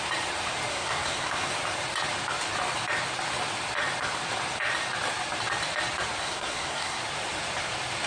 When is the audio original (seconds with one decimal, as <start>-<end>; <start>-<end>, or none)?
0.0-0.7; 1.5-6.2; 7.0-8.1